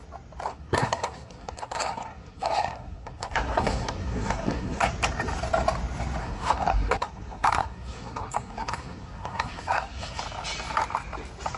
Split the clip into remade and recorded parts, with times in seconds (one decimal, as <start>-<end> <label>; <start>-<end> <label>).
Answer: 0.0-0.5 recorded; 0.5-4.9 remade; 4.9-6.2 recorded; 6.2-10.2 remade; 10.2-11.6 recorded